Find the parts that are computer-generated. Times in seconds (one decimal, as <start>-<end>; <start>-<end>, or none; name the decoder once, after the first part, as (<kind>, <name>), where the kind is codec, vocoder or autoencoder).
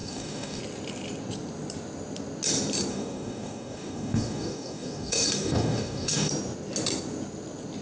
0.0-0.6 (codec, DAC); 2.9-6.3